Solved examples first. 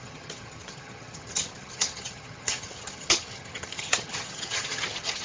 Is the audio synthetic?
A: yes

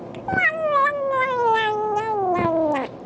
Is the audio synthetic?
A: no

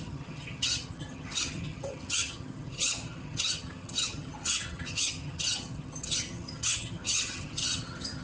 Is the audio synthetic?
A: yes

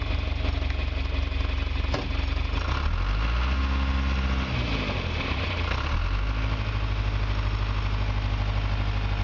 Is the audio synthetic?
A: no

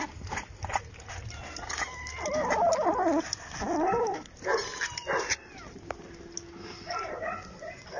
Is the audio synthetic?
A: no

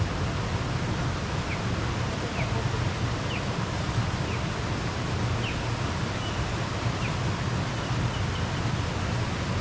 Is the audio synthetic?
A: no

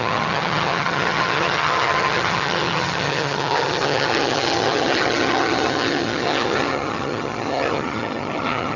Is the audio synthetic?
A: yes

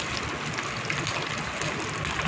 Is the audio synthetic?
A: no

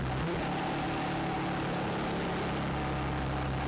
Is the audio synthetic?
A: no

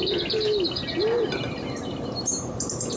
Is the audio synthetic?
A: no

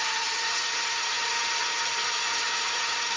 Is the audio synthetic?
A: yes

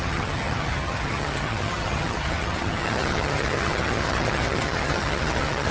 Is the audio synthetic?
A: yes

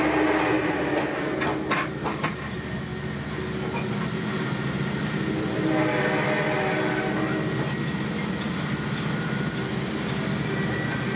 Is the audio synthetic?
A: no